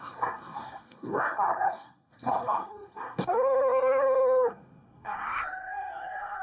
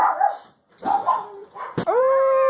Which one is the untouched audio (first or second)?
second